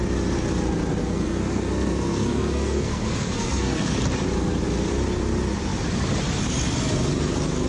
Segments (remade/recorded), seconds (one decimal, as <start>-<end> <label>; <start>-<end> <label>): 0.0-1.0 recorded; 1.0-4.0 remade; 4.0-7.7 recorded